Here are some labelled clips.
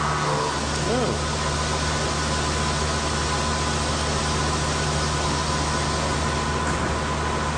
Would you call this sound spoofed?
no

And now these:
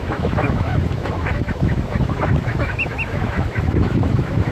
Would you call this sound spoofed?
yes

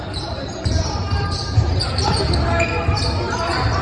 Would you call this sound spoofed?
no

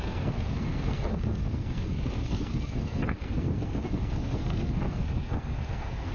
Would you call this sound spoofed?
yes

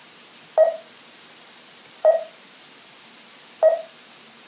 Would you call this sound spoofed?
yes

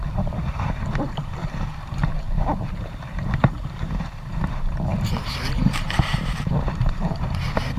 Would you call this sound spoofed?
yes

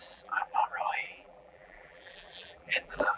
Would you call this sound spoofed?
yes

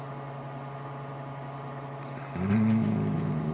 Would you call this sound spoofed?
no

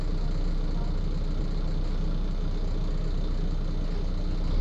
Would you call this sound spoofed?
no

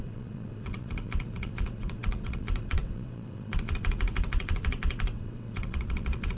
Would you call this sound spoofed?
yes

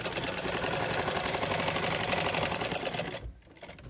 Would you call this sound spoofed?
no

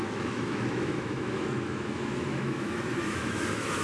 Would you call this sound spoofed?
yes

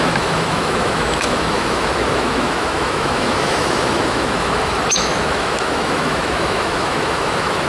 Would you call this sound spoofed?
yes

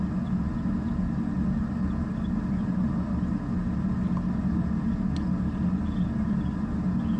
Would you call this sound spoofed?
no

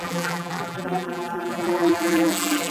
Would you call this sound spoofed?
yes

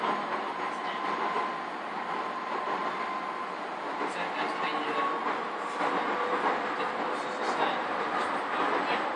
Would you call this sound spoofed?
no